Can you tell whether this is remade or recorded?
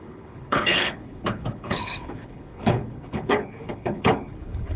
remade